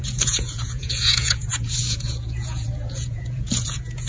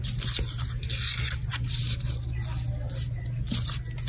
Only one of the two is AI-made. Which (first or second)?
first